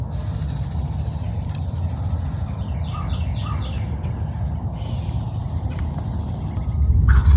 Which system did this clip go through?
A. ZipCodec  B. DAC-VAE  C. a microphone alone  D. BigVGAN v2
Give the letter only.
C